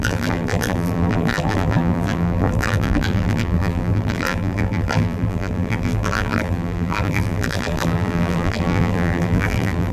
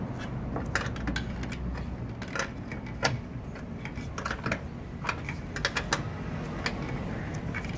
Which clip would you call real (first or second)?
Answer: second